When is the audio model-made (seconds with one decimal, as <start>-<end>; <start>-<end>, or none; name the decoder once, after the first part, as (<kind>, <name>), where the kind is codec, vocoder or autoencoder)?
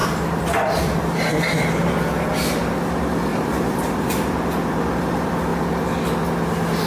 3.3-5.0 (vocoder, BigVGAN v2)